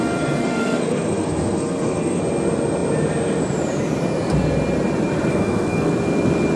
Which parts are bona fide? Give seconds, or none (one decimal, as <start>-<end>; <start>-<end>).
0.0-0.4; 2.2-5.3; 5.9-6.6